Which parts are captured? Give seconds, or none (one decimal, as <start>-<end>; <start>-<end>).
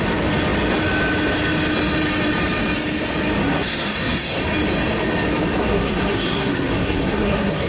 0.0-3.4; 4.4-5.6